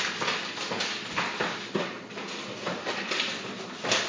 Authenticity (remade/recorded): recorded